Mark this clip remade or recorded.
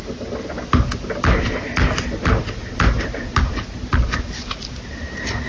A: recorded